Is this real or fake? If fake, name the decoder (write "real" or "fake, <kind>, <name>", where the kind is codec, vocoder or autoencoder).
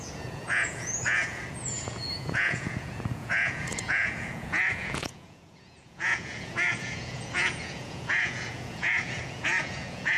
fake, vocoder, Vocos